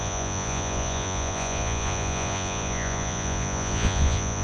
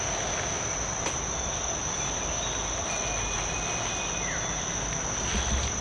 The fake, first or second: first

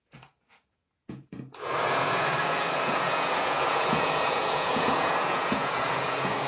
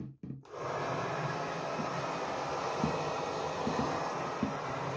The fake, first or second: first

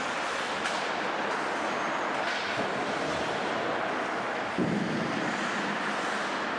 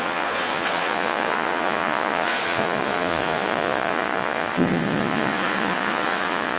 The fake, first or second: second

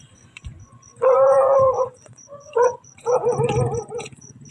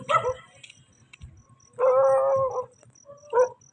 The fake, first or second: first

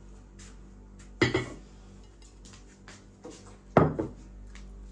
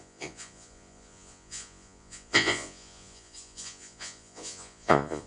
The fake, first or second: second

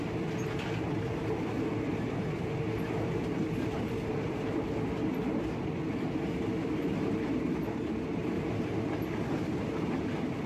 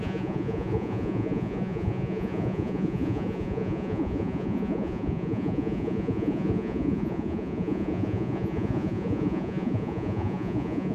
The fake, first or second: second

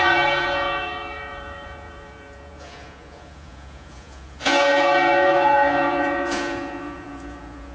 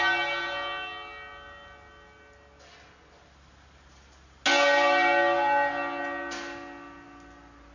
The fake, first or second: first